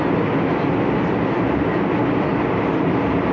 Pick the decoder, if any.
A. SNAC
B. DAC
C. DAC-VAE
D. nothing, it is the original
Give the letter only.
D